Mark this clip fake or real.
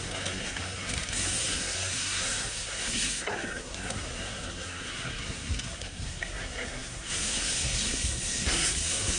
fake